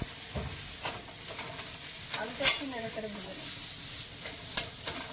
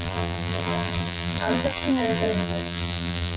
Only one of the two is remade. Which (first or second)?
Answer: second